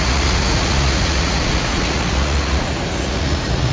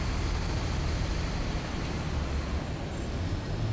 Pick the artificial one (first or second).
first